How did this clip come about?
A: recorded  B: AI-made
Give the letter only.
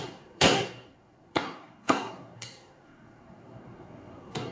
B